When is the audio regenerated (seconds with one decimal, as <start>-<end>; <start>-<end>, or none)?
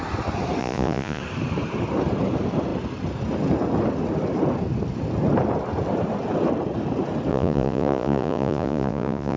0.6-1.2; 7.3-9.4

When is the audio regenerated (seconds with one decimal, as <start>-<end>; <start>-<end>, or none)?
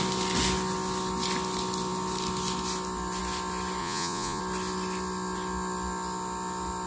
3.8-4.4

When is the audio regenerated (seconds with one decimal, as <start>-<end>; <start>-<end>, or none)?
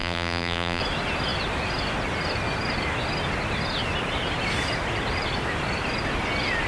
0.0-0.8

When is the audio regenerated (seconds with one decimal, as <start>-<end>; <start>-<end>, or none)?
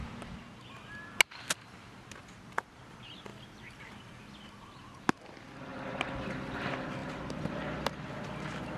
3.3-3.9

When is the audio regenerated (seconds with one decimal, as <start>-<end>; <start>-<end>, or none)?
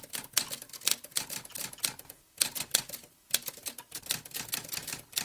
none